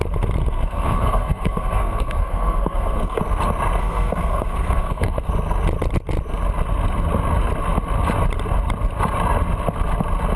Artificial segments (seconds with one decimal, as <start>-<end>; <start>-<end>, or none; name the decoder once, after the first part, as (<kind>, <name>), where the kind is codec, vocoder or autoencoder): 0.4-3.2 (codec, SNAC); 3.8-5.3